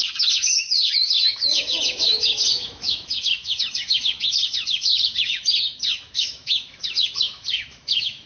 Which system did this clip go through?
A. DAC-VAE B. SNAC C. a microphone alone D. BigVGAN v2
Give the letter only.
A